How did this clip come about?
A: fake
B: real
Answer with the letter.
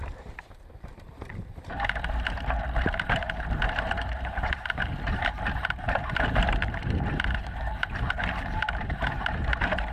A